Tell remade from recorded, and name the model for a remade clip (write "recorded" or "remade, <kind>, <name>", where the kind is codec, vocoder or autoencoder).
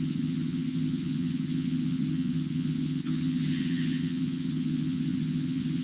remade, vocoder, HiFi-GAN